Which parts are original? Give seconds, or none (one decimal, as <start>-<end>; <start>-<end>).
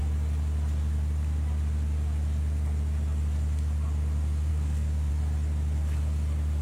0.0-4.5; 5.1-6.6